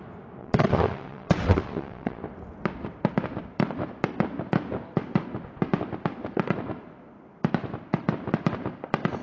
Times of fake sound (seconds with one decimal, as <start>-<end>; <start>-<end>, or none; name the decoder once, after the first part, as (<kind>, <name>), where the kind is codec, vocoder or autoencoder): 0.4-2.2 (vocoder, WaveNeXt)